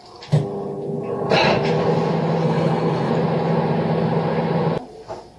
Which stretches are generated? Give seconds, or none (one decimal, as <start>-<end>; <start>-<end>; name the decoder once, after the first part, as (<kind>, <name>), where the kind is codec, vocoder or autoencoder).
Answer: 2.4-3.1 (codec, HILCodec)